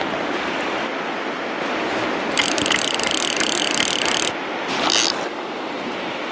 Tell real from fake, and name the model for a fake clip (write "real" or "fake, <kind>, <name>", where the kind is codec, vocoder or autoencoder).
real